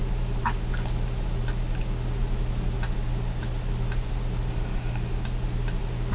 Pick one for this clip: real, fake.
real